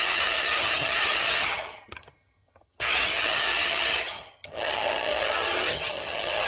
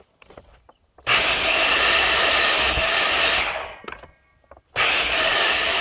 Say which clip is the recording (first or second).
second